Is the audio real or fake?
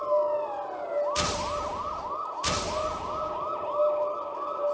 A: real